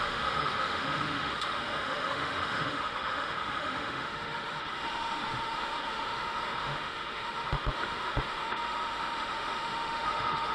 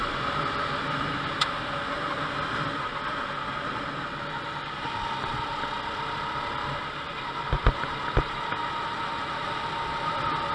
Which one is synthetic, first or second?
first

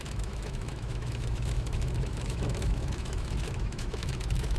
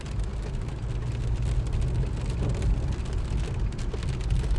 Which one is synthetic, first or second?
first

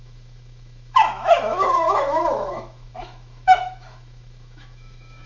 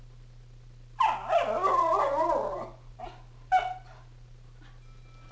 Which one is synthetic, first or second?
first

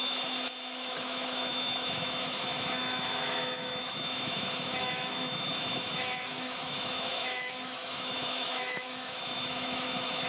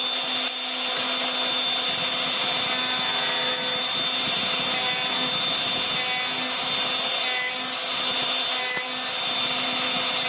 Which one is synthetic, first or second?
first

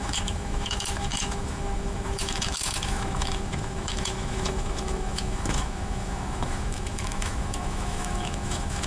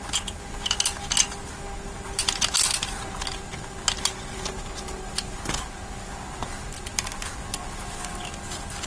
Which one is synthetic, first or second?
first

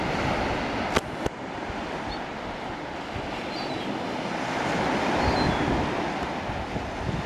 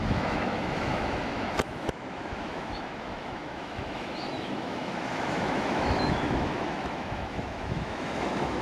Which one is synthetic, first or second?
second